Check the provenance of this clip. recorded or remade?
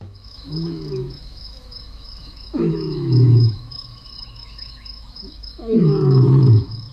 remade